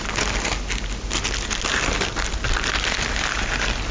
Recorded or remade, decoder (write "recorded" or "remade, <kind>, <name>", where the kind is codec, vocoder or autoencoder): recorded